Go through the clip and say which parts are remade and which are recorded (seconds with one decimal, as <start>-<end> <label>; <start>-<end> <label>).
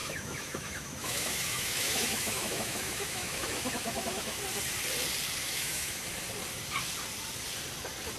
0.0-4.4 remade; 4.4-5.4 recorded; 5.4-6.1 remade; 6.1-8.2 recorded